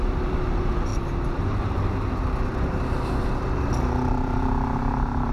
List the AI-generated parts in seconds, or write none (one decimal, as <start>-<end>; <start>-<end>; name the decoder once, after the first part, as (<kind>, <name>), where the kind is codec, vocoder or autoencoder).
0.0-0.9 (vocoder, BigVGAN v2); 4.1-5.3